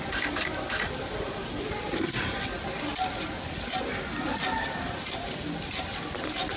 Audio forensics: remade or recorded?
recorded